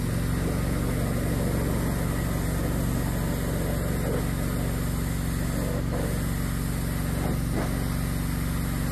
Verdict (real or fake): real